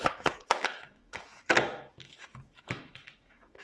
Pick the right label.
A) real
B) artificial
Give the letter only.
B